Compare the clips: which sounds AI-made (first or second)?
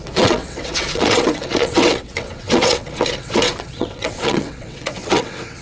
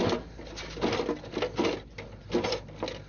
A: first